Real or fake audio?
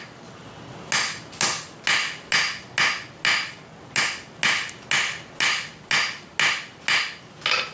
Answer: real